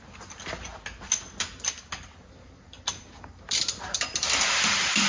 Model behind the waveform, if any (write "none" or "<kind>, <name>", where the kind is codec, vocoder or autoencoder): none